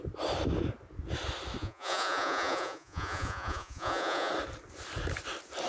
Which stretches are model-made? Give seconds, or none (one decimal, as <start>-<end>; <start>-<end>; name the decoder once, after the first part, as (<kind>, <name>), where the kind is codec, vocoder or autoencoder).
1.6-4.3 (vocoder, Vocos)